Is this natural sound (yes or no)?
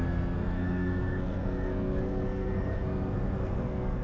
no